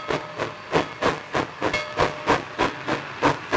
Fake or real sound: real